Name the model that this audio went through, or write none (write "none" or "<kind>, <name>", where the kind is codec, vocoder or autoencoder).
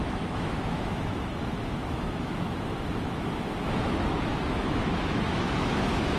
autoencoder, DAC-VAE